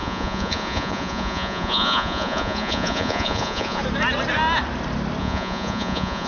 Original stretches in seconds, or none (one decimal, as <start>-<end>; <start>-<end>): 3.8-5.2